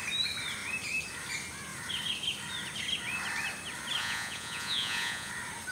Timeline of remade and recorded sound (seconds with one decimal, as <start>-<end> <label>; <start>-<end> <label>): 0.0-4.0 recorded; 4.0-5.3 remade; 5.3-5.7 recorded